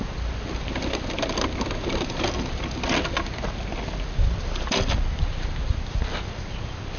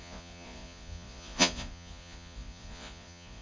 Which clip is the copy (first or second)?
second